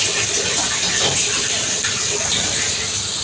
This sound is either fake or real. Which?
real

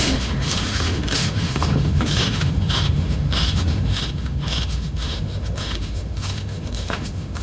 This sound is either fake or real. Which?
fake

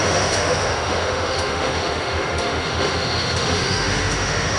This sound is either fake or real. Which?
fake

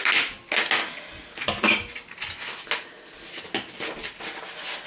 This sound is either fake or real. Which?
real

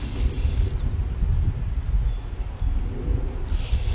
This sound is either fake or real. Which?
real